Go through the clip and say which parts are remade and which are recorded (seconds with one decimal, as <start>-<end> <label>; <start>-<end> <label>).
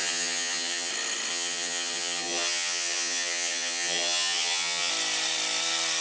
0.0-0.9 remade; 0.9-1.3 recorded; 1.3-4.9 remade; 4.9-6.0 recorded